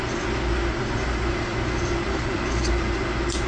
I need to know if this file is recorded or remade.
recorded